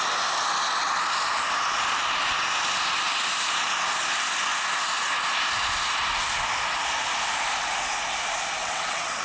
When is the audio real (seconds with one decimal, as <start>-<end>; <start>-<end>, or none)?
0.0-8.6